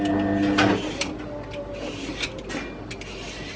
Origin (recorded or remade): recorded